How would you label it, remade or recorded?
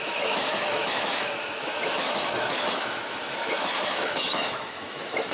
remade